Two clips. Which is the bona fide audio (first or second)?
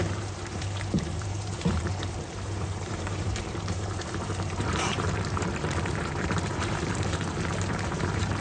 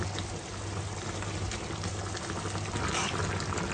second